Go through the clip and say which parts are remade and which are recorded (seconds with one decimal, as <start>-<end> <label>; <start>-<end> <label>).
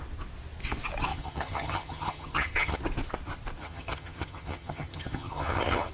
0.0-1.1 recorded; 1.1-2.8 remade; 2.8-3.6 recorded; 3.6-5.9 remade